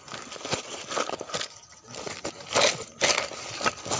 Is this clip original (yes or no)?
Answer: yes